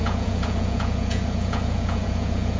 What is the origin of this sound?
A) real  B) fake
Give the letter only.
B